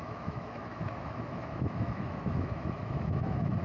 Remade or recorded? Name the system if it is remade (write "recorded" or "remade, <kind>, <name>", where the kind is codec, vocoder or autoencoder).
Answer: remade, autoencoder, DAC-VAE